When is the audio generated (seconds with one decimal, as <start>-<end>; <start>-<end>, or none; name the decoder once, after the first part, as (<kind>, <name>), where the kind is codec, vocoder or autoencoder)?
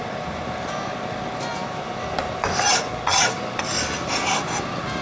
none